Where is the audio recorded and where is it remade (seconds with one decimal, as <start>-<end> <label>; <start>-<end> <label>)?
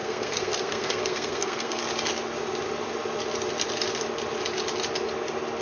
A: 0.0-1.8 remade; 1.8-5.6 recorded